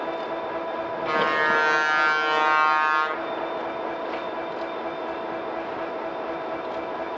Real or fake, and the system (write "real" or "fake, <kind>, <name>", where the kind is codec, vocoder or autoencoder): real